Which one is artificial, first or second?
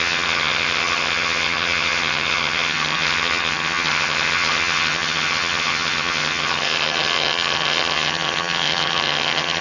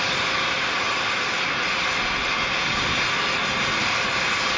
first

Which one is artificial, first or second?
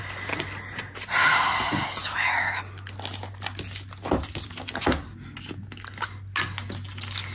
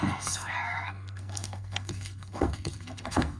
second